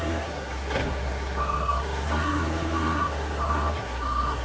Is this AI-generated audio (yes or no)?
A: yes